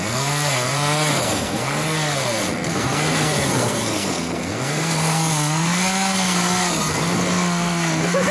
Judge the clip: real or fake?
fake